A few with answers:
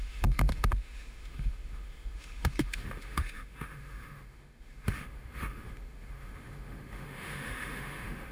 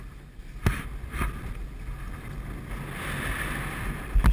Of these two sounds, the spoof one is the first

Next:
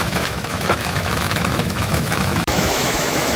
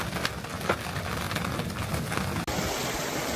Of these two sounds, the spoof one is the first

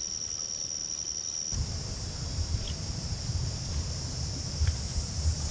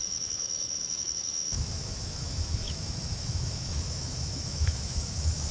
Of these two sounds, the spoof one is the second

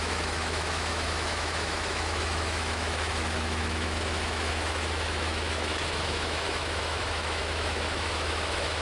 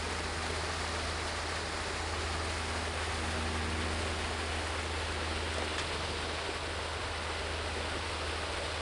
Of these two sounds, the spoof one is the first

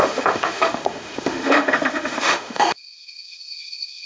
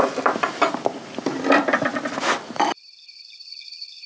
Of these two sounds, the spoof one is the first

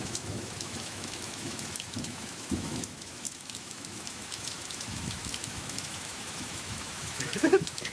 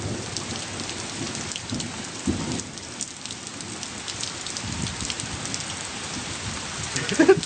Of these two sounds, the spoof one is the first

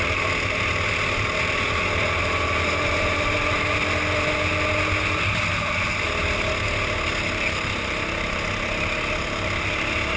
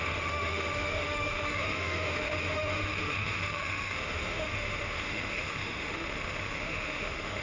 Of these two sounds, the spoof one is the second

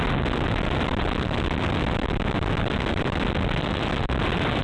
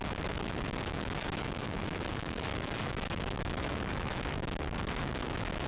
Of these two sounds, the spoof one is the second